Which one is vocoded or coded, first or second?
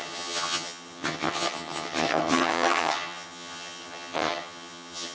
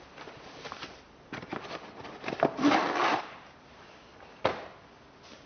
first